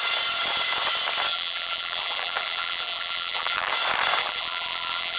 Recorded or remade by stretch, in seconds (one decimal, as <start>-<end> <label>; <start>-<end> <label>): 0.0-1.3 recorded; 1.3-3.7 remade; 3.7-4.2 recorded; 4.2-5.2 remade

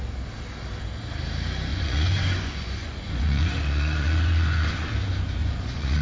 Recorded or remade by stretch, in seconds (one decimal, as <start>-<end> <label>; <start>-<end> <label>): 0.0-1.7 recorded; 1.7-4.9 remade; 4.9-5.4 recorded; 5.4-6.0 remade

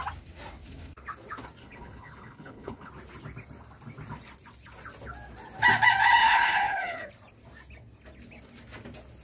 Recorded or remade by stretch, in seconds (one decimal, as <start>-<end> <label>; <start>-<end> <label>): 0.0-1.6 recorded; 1.6-2.9 remade; 2.9-6.2 recorded; 6.2-7.1 remade; 7.1-9.2 recorded